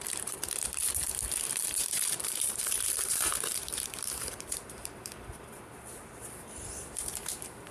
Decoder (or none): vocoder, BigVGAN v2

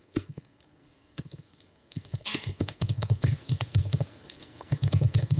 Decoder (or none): codec, SNAC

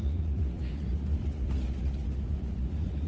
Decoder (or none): vocoder, Vocos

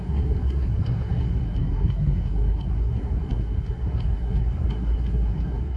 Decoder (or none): codec, SNAC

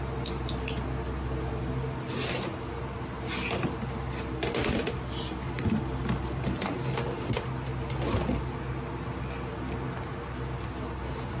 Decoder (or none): none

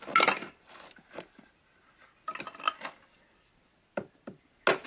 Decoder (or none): none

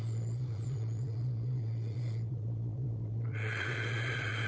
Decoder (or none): vocoder, Vocos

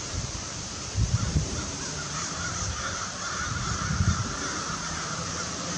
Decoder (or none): vocoder, BigVGAN v2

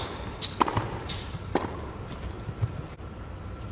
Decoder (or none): none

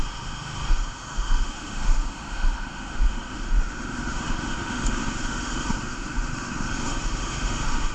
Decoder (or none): autoencoder, DAC-VAE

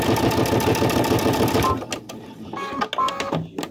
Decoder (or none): none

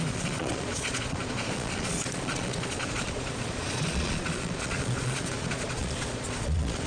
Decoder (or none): vocoder, Vocos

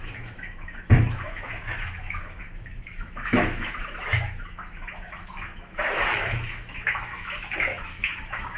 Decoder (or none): autoencoder, DAC-VAE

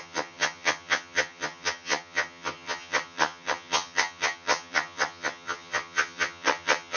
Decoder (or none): vocoder, HiFi-GAN